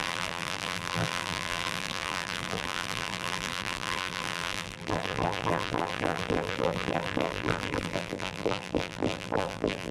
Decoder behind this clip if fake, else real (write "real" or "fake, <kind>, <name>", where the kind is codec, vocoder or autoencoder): fake, vocoder, BigVGAN v2